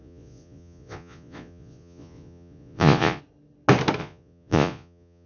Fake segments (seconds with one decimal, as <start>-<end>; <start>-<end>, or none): 0.0-3.2; 4.0-5.3